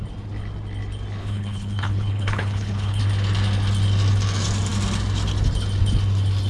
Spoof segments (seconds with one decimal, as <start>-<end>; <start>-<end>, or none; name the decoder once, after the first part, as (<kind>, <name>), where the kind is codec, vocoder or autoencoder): 1.2-3.0 (codec, HILCodec)